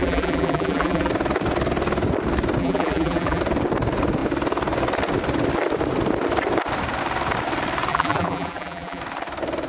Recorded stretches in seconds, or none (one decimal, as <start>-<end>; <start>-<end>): 1.1-2.6; 3.4-7.9; 9.0-9.7